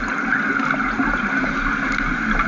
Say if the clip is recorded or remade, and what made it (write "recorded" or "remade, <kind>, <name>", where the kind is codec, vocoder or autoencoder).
recorded